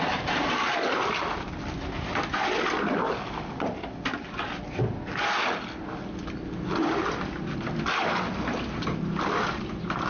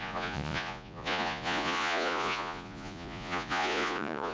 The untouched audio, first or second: first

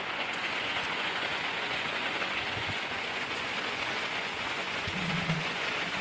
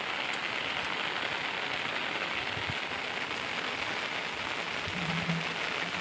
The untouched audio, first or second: second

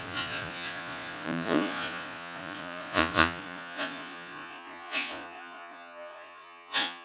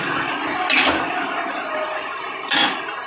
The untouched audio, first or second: second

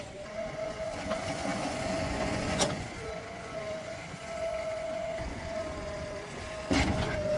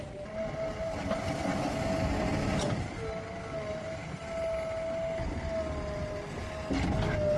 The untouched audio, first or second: second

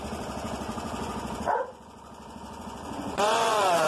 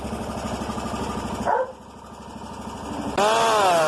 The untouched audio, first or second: second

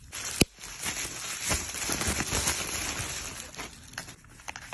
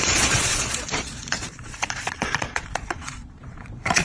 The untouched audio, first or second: first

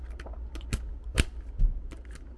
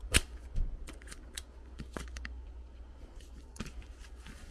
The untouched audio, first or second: first